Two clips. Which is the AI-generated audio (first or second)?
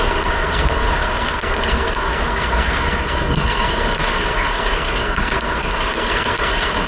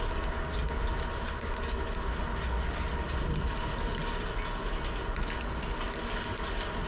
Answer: first